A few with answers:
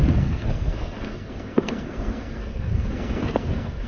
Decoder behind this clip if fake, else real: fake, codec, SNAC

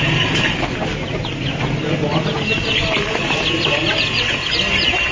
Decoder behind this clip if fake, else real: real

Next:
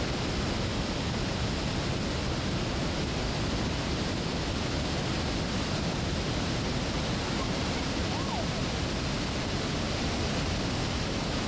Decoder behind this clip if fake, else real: real